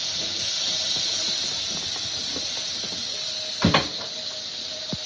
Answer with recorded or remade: recorded